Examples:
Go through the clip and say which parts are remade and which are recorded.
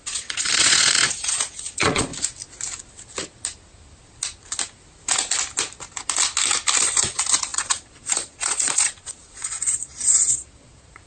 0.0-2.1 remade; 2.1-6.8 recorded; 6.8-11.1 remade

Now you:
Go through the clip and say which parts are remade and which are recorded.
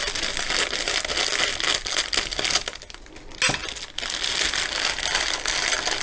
0.0-6.0 recorded